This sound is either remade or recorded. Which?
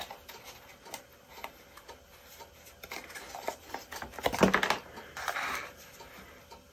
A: recorded